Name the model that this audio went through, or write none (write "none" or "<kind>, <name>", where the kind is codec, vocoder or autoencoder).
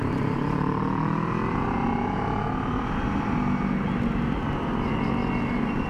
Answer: none